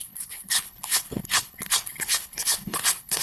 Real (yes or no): no